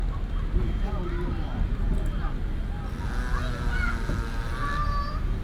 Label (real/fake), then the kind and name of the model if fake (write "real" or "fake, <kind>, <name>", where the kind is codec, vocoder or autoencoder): real